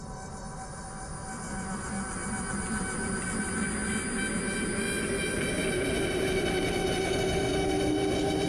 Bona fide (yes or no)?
yes